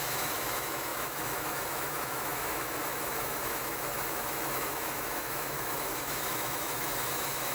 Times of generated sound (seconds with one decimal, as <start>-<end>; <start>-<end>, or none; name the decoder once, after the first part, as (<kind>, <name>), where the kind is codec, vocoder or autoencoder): 0.0-7.5 (autoencoder, DAC-VAE)